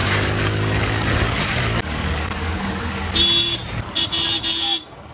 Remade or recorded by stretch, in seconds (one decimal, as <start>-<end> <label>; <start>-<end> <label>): 0.0-3.1 remade; 3.1-5.1 recorded